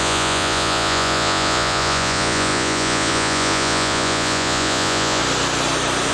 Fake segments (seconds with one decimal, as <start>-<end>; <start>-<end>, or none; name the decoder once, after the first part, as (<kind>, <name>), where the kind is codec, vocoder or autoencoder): 0.0-5.2 (vocoder, Vocos)